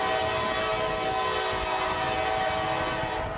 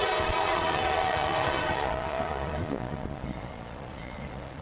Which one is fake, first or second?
second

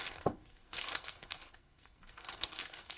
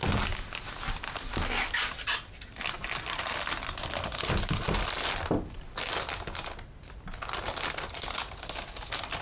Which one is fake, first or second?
first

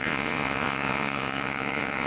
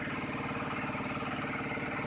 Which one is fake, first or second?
first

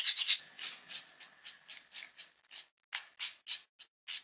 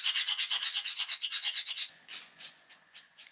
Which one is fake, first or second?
second